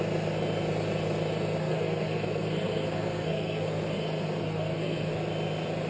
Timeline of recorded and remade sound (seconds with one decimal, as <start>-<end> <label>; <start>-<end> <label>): 0.0-1.6 recorded; 1.6-5.1 remade; 5.1-5.9 recorded